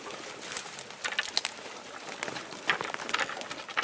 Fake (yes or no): no